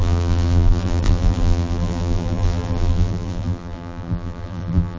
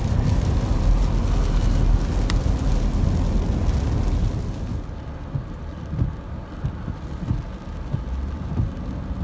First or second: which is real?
second